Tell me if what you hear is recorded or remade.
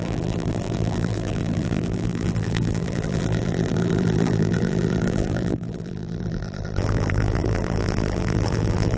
remade